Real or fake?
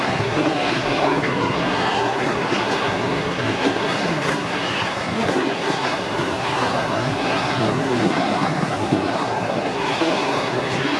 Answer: fake